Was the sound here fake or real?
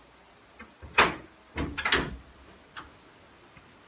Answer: real